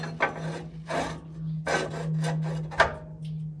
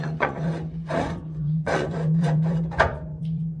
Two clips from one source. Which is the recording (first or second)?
first